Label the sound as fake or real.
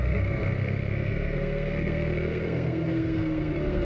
fake